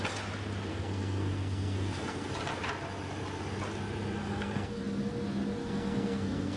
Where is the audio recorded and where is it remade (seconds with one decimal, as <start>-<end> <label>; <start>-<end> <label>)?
0.0-0.7 recorded; 0.7-2.3 remade; 2.3-4.2 recorded; 4.2-4.8 remade; 4.8-5.6 recorded; 5.6-6.6 remade